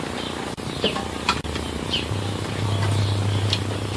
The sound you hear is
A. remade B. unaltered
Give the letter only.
A